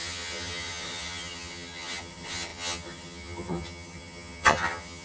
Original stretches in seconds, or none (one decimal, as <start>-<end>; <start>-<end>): none